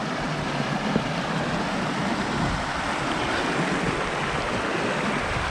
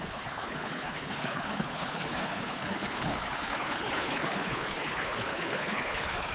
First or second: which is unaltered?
first